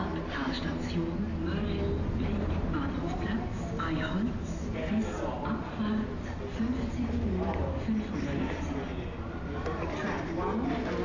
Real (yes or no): yes